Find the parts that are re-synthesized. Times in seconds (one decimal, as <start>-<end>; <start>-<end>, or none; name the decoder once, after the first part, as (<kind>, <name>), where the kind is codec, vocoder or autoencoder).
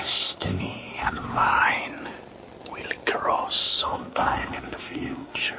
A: 0.0-1.5 (codec, SNAC); 3.6-5.6